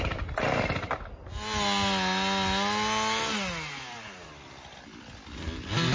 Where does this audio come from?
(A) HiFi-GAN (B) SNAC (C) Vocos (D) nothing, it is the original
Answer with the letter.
D